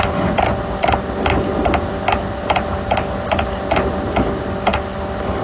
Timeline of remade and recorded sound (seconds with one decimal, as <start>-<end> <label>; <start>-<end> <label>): 0.0-5.4 recorded